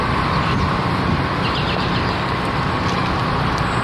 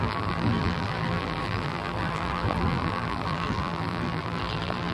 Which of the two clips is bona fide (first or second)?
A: first